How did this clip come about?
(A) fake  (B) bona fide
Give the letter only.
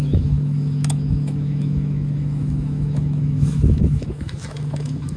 A